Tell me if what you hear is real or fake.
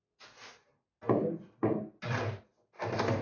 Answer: real